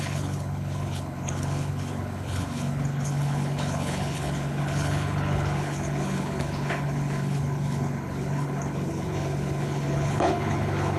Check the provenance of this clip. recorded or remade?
remade